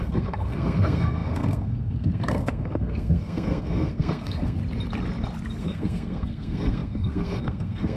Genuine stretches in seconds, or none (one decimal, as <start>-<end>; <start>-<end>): 4.6-5.6